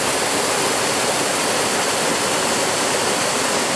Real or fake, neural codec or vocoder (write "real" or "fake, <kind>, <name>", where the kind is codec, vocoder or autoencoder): real